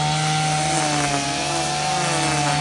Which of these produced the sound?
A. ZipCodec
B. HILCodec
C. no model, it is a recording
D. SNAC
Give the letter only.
C